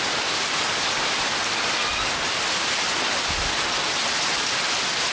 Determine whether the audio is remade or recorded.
recorded